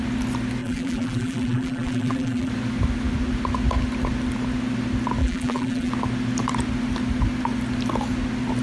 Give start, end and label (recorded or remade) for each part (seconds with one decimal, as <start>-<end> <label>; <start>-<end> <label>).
0.0-0.6 recorded; 0.6-2.5 remade; 2.5-5.2 recorded; 5.2-5.9 remade; 5.9-8.6 recorded

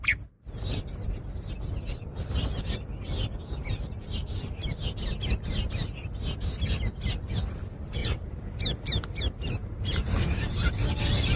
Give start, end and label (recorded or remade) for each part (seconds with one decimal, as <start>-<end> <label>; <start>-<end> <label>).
0.0-8.0 recorded; 8.0-11.0 remade; 11.0-11.4 recorded